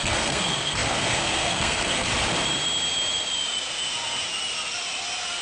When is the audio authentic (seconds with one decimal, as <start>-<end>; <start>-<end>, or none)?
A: 2.1-5.4